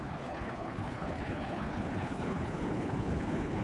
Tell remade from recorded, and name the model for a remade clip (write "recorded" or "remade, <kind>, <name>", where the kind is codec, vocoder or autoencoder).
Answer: remade, codec, HILCodec